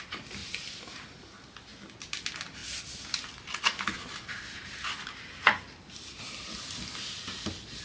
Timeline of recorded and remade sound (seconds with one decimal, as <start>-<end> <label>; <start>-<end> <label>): 0.0-7.8 recorded